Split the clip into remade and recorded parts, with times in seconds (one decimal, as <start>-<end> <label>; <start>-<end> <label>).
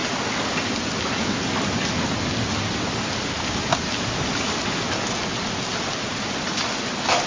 0.0-7.3 recorded